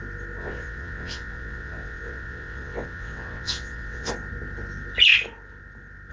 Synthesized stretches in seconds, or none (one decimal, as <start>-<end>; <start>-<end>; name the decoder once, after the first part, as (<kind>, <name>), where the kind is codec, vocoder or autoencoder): 0.4-4.1 (vocoder, WaveNeXt)